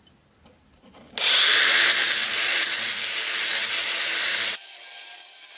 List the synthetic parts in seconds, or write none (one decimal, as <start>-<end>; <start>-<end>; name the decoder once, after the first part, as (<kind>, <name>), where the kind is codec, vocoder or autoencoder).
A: 2.0-3.0 (vocoder, BigVGAN v2); 3.5-4.3

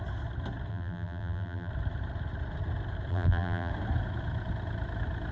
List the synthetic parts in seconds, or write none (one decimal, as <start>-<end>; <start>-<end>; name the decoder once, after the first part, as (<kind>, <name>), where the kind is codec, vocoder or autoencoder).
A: 0.7-1.7 (vocoder, BigVGAN v2); 3.1-3.7

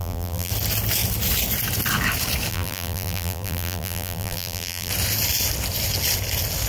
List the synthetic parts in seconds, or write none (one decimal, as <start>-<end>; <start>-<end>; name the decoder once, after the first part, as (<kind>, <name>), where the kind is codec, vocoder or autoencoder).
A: 0.0-0.5 (vocoder, BigVGAN v2); 2.5-4.9

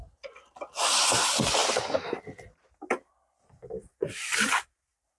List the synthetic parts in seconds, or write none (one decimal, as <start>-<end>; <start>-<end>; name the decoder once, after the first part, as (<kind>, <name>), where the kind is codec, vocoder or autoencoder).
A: none

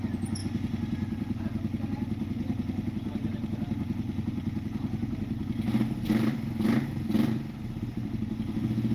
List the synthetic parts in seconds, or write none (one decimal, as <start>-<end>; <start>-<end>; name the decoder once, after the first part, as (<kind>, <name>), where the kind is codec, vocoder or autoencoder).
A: 0.4-1.4 (vocoder, BigVGAN v2)

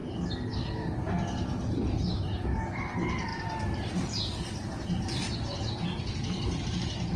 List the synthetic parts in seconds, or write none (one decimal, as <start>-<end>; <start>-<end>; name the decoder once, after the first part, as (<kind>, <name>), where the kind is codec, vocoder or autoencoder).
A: 3.3-7.2 (vocoder, BigVGAN v2)